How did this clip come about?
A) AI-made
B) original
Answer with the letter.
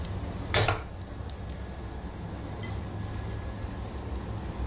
B